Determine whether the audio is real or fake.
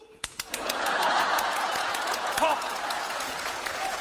fake